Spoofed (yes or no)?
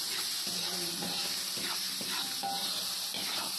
yes